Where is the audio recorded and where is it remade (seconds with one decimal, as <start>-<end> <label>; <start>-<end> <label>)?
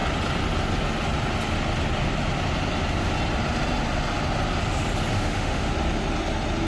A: 0.0-5.1 recorded; 5.1-5.7 remade; 5.7-6.7 recorded